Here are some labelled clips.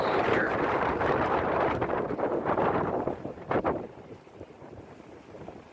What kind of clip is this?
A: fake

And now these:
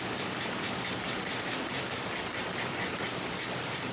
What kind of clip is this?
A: fake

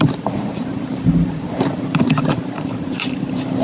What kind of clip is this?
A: fake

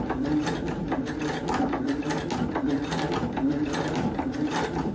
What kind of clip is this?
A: real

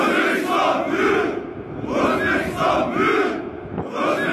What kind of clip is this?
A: real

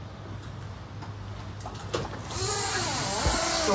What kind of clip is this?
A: real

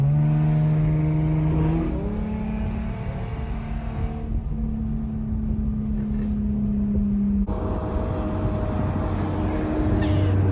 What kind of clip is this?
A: real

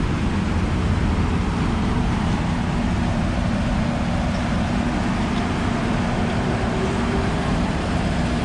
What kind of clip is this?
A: fake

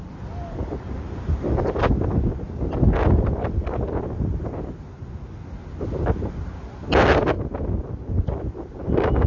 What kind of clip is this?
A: real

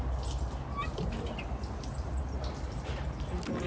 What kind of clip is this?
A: real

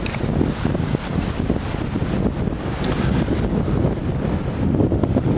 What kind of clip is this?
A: real